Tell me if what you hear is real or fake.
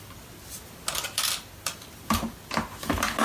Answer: real